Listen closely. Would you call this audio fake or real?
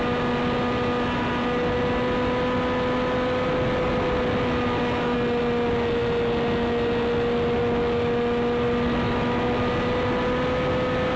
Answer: real